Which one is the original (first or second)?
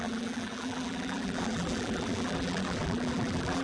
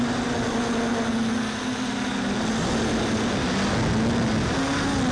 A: second